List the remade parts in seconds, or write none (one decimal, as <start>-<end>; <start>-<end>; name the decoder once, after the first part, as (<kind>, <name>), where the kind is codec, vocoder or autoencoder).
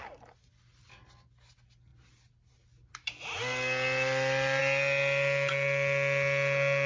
none